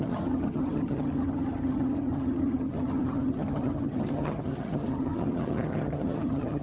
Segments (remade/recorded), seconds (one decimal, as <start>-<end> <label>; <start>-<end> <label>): 0.0-6.6 remade